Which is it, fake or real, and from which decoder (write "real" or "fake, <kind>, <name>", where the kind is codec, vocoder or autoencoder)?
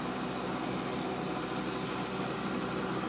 real